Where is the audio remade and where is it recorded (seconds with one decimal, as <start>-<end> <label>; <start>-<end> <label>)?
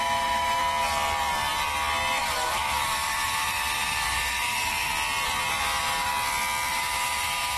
0.0-0.6 remade; 0.6-2.2 recorded; 2.2-4.9 remade; 4.9-5.5 recorded; 5.5-6.1 remade; 6.1-6.7 recorded; 6.7-7.6 remade